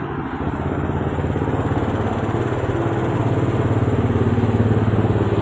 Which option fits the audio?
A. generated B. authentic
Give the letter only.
B